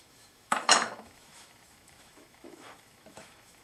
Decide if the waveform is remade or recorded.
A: remade